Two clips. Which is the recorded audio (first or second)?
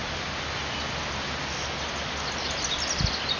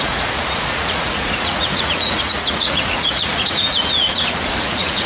first